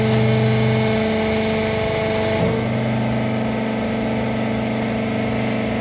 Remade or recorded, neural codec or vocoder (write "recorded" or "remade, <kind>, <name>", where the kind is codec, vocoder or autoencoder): recorded